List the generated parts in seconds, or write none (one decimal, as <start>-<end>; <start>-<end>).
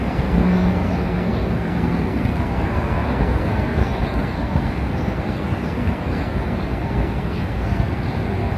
0.0-8.6